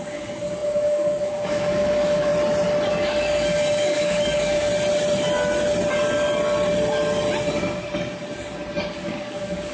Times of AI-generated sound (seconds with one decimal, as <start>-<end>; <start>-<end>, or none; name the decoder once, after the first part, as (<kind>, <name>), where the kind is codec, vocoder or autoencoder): 0.0-2.3 (codec, DAC); 2.9-4.7; 8.9-9.7